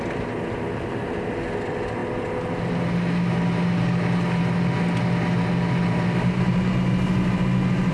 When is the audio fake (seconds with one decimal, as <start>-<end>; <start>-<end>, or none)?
none